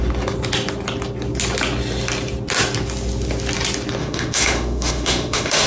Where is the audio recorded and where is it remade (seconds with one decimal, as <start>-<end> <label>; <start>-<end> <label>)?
0.0-4.0 recorded; 4.0-5.7 remade